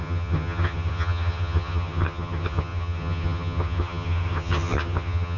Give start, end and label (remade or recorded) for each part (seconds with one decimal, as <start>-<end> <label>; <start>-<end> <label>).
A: 0.0-5.4 remade